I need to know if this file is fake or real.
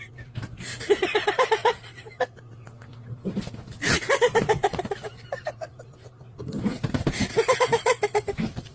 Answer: fake